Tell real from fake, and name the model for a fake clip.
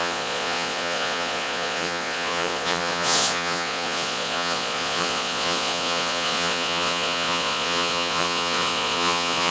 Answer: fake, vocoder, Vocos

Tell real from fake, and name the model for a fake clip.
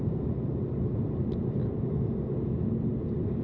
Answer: real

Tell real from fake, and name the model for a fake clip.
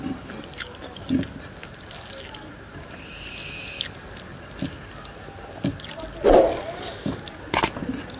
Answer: real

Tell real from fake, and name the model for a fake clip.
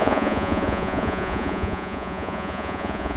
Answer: fake, vocoder, Vocos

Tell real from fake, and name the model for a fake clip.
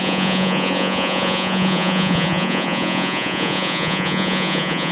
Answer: fake, vocoder, Vocos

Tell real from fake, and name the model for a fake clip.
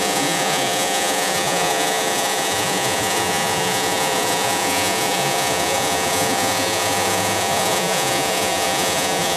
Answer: fake, vocoder, Vocos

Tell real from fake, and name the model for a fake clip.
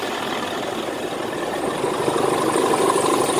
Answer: real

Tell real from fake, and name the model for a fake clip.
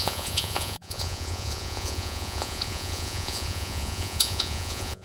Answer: fake, vocoder, Vocos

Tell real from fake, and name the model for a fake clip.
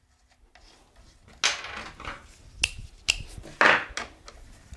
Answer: real